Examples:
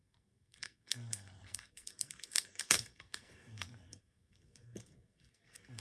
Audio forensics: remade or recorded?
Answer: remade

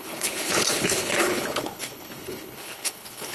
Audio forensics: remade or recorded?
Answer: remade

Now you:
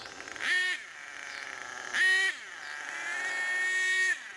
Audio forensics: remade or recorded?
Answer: recorded